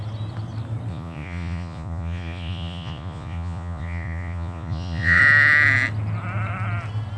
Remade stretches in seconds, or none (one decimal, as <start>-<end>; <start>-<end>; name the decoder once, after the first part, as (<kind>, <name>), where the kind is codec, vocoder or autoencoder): 0.9-5.2 (vocoder, Vocos)